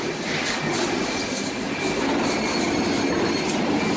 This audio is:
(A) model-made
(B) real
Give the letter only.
B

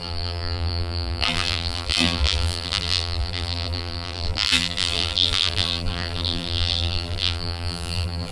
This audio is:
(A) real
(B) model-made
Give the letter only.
B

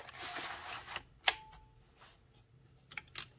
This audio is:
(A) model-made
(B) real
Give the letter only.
B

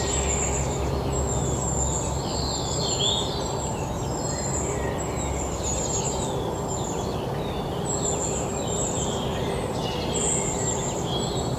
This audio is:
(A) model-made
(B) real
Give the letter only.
B